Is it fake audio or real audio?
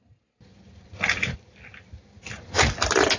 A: real